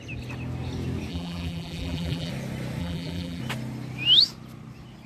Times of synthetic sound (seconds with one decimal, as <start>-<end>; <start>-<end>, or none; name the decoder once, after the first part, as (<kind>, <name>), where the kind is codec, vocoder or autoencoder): 1.1-2.3 (vocoder, BigVGAN v2); 2.8-3.4